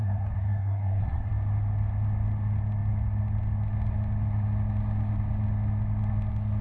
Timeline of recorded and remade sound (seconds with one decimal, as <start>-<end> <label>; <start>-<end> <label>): 0.0-1.3 remade; 1.3-6.6 recorded